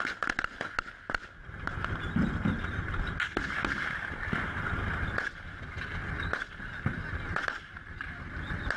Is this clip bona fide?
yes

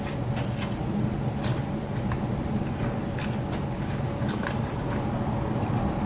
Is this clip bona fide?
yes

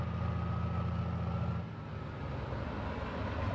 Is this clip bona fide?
yes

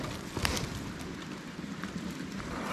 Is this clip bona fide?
yes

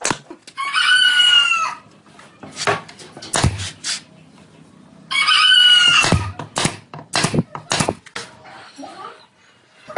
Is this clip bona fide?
yes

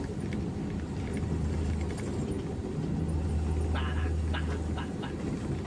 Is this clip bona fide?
yes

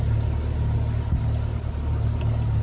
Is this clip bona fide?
yes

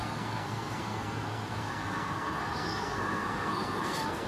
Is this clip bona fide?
no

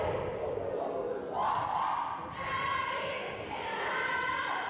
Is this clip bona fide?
yes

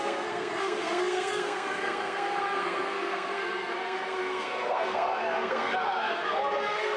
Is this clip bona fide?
no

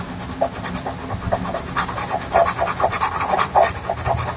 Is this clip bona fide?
yes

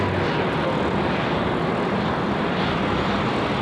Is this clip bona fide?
yes